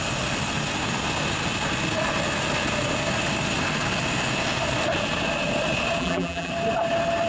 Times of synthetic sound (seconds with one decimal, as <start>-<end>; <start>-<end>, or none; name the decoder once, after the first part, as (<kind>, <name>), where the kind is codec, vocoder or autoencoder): 6.0-6.5 (vocoder, BigVGAN v2)